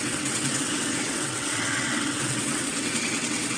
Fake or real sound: fake